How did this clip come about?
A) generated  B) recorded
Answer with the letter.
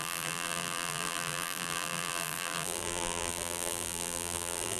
A